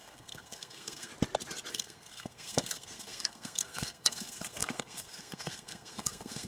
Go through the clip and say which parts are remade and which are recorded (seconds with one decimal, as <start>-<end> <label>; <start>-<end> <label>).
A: 0.0-1.1 remade; 1.1-1.7 recorded; 1.7-6.5 remade